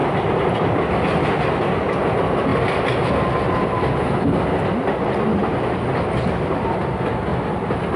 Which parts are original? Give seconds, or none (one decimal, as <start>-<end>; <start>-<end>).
0.0-8.0